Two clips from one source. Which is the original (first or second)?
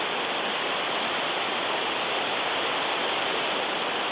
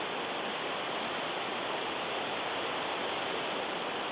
second